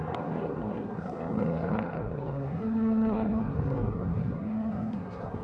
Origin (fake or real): fake